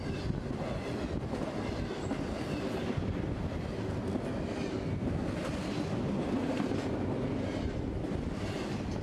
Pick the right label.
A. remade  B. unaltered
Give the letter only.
B